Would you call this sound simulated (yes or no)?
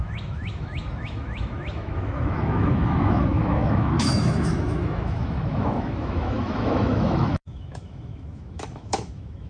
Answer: yes